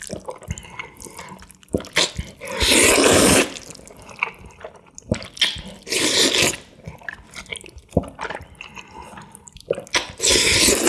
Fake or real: real